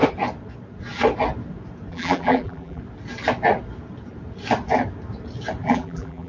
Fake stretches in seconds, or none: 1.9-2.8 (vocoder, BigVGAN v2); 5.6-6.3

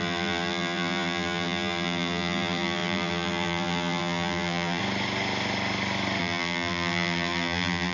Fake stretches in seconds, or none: 0.0-4.8 (vocoder, BigVGAN v2); 6.2-7.9

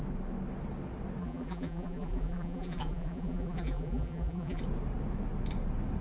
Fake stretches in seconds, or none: 1.2-4.6 (vocoder, BigVGAN v2)

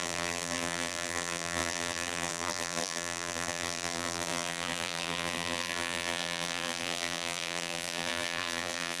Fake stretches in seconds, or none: 0.0-9.0 (vocoder, BigVGAN v2)

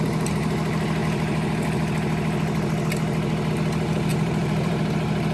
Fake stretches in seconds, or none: 4.1-4.8 (vocoder, BigVGAN v2)

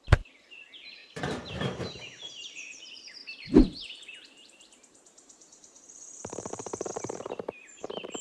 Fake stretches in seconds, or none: 0.0-1.0 (vocoder, BigVGAN v2); 1.9-3.2; 4.0-8.2

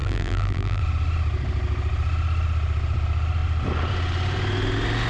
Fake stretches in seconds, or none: 0.0-0.8 (vocoder, BigVGAN v2)